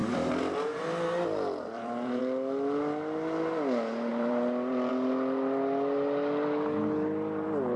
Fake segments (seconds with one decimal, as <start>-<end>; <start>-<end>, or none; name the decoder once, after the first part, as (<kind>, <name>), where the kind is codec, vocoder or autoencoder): 0.0-2.2 (vocoder, BigVGAN v2); 4.1-4.9